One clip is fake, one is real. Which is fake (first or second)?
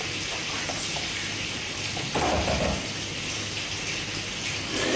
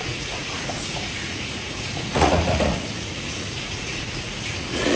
second